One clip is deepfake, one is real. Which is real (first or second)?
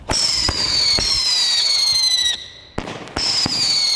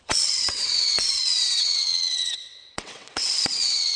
first